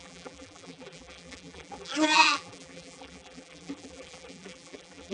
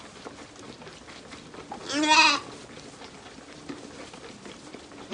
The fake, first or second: first